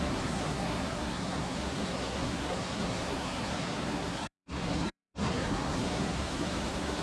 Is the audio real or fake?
fake